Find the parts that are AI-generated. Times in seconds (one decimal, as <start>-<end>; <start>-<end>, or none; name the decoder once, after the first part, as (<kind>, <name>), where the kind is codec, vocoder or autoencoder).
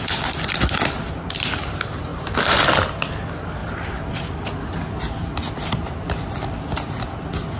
2.1-2.7 (vocoder, BigVGAN v2)